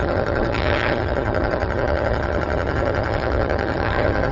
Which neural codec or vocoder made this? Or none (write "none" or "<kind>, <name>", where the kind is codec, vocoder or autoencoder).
vocoder, HiFi-GAN